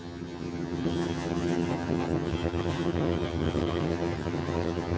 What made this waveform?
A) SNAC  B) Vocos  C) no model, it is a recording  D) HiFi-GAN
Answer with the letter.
D